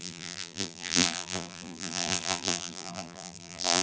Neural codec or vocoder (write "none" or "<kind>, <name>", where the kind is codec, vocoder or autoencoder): vocoder, BigVGAN v2